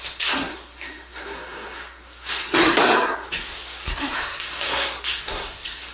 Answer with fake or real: fake